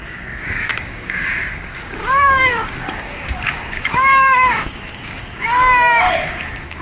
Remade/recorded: remade